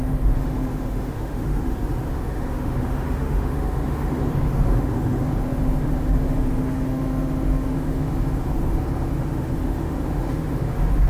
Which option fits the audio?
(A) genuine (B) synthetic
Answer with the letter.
B